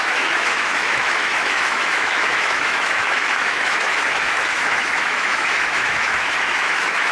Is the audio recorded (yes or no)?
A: no